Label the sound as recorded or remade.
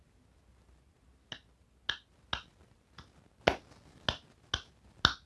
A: recorded